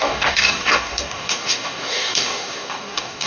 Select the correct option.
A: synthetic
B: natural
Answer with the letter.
A